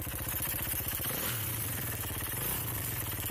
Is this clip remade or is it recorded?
remade